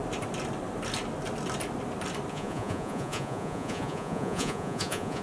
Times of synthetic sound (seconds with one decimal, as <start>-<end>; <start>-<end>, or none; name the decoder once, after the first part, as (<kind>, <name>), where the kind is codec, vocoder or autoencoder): 2.3-5.2 (vocoder, Vocos)